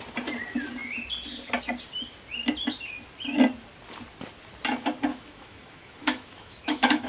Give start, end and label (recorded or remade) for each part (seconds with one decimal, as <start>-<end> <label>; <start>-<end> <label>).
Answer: 0.0-5.1 recorded; 5.1-7.1 remade